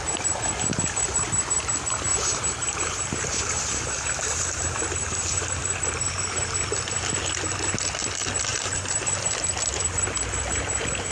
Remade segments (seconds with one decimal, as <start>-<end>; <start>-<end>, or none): 2.1-5.5; 8.5-9.0